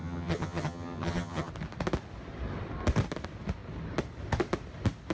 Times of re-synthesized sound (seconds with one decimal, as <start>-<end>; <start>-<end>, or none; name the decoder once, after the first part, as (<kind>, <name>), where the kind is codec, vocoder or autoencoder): 0.0-1.5 (vocoder, HiFi-GAN)